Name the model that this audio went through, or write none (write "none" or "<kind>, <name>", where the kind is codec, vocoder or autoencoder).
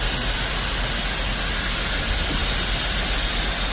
none